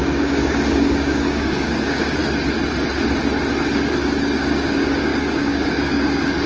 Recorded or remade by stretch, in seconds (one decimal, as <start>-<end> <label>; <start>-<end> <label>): 0.0-2.2 remade; 2.2-4.2 recorded; 4.2-6.5 remade